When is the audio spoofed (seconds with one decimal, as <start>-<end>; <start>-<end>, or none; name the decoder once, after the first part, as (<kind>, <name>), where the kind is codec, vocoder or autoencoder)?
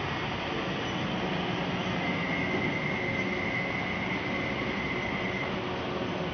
none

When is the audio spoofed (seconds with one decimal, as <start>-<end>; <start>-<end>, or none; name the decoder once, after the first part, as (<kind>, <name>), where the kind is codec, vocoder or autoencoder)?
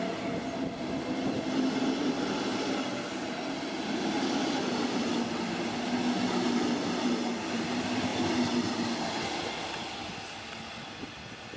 none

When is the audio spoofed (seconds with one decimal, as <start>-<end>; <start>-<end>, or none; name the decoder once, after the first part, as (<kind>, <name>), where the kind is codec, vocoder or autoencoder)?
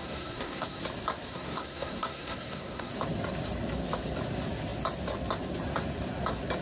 0.0-0.8 (codec, SNAC); 1.3-2.9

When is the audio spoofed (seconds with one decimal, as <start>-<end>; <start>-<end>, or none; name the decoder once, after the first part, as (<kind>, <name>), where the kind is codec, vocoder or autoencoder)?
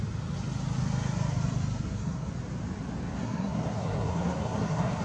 1.7-2.3 (codec, SNAC); 3.2-5.0